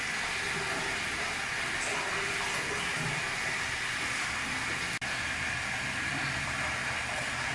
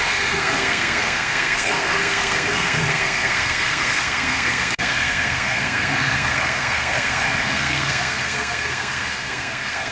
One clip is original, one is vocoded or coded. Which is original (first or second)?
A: first